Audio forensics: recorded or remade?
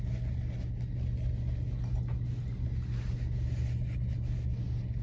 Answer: recorded